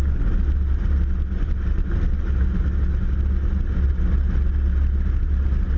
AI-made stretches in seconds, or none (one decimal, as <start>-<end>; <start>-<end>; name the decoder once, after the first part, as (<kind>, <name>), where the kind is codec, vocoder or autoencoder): none